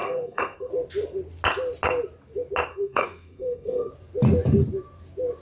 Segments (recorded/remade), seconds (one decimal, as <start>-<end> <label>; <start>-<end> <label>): 0.0-0.7 remade; 0.7-2.7 recorded; 2.7-3.9 remade; 3.9-5.4 recorded